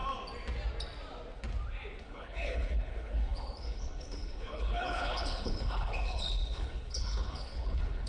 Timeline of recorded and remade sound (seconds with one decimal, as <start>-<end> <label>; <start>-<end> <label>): 0.0-2.0 recorded; 2.0-8.1 remade